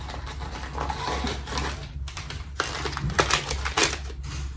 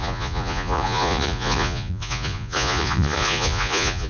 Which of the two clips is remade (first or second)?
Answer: second